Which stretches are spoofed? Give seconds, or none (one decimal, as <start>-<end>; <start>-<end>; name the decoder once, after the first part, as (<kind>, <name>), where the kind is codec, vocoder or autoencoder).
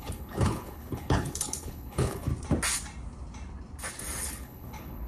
0.0-2.3 (codec, HILCodec); 4.2-5.1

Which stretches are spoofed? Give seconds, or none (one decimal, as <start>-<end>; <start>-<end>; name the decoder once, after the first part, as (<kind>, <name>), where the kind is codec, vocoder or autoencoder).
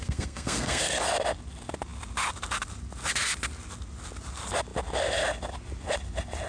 0.0-1.0 (codec, SNAC)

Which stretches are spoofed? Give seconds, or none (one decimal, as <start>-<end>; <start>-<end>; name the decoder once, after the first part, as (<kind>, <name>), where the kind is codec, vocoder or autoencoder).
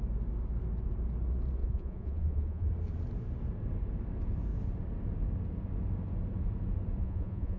1.6-2.7 (vocoder, Vocos); 7.0-7.6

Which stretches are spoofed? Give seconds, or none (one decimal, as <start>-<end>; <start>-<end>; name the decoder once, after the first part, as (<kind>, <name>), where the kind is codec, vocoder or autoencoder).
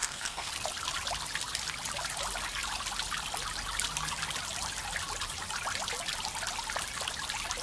0.0-0.5 (codec, SNAC)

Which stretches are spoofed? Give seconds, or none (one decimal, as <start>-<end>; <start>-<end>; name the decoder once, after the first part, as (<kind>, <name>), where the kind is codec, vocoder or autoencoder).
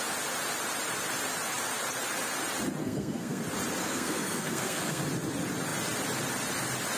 2.8-3.4 (codec, SNAC); 3.8-5.0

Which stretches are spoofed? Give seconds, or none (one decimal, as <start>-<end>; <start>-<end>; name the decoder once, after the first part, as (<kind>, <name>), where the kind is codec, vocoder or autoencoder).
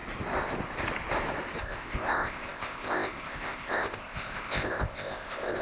1.6-5.6 (codec, ZipCodec)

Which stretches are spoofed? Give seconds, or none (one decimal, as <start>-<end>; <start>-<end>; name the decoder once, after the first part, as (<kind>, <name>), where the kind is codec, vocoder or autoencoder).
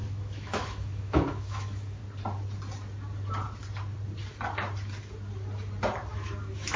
0.0-2.0 (autoencoder, DAC-VAE); 6.1-6.8